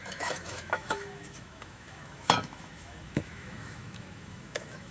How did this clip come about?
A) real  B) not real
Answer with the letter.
B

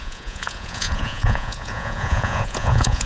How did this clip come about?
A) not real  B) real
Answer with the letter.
A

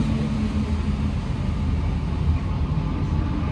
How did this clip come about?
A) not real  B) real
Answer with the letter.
B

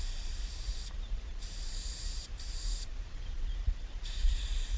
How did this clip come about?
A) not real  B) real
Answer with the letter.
A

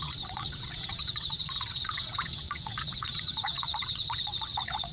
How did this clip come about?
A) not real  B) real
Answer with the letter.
A